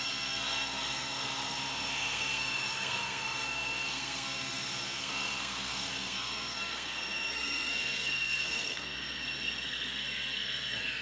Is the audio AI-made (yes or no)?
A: yes